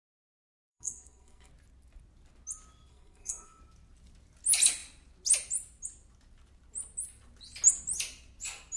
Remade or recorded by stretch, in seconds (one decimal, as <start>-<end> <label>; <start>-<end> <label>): 0.0-0.5 recorded; 0.5-1.5 remade; 1.5-2.9 recorded; 2.9-3.6 remade; 3.6-8.8 recorded